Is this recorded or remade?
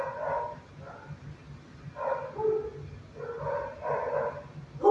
recorded